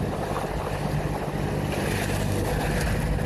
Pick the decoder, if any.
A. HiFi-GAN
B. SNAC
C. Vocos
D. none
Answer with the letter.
D